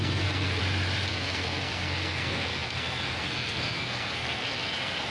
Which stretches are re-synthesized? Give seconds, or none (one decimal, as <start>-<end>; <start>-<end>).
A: 0.0-0.6; 1.1-5.1